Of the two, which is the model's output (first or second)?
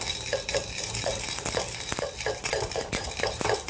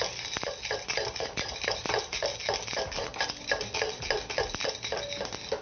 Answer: first